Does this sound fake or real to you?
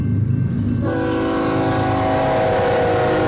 real